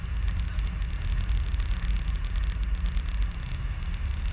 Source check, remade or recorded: recorded